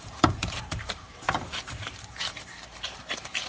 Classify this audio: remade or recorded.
remade